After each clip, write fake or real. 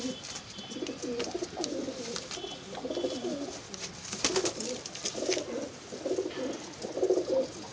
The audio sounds real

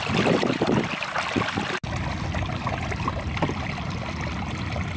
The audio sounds real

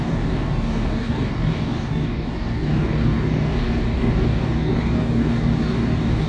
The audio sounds fake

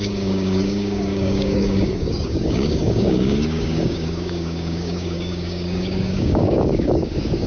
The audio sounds fake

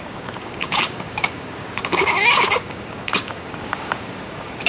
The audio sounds fake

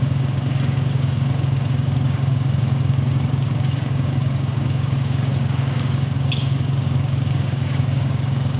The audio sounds fake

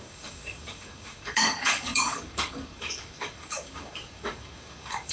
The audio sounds fake